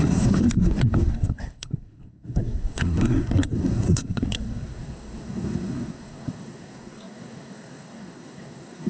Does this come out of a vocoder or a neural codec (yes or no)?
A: yes